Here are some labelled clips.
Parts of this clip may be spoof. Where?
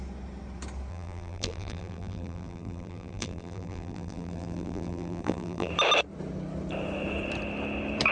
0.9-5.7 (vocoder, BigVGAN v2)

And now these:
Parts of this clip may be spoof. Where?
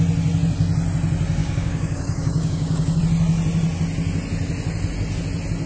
1.4-3.0 (codec, DAC)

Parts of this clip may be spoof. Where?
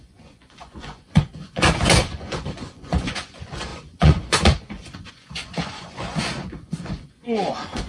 0.0-7.9 (vocoder, Vocos)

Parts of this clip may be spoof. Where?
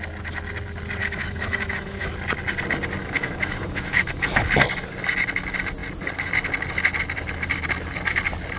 1.0-2.1 (autoencoder, DAC-VAE); 3.0-4.5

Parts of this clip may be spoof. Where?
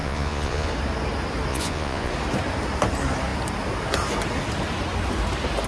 0.0-0.7 (vocoder, Vocos); 1.5-2.1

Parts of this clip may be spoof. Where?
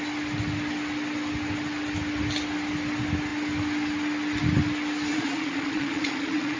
5.1-6.6 (vocoder, Vocos)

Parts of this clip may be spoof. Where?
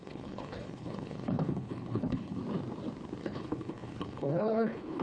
0.0-2.4 (codec, HILCodec); 3.2-5.0